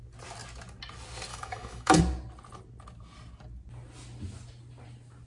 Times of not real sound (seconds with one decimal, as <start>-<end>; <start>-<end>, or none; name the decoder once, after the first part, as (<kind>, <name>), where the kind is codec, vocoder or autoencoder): 1.3-2.0 (autoencoder, DAC-VAE)